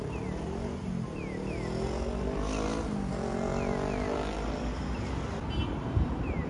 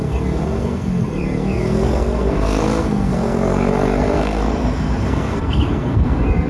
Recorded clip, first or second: first